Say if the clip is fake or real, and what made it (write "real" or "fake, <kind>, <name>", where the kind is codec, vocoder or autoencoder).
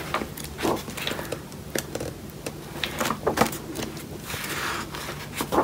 real